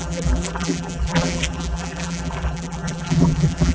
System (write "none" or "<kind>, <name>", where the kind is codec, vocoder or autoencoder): vocoder, BigVGAN v2